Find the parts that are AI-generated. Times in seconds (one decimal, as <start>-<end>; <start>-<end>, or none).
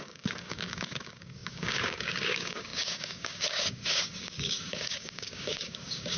0.0-6.2